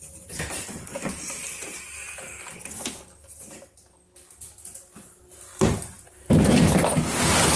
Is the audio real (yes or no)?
yes